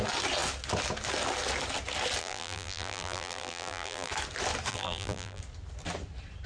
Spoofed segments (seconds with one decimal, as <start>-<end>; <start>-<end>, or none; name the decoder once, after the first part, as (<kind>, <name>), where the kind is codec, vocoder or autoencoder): 2.2-4.1 (vocoder, BigVGAN v2); 4.7-5.4